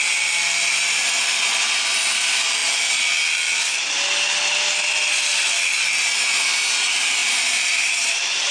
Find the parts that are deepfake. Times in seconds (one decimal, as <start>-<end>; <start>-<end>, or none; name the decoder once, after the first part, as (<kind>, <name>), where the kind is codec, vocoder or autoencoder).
7.2-8.5 (vocoder, BigVGAN v2)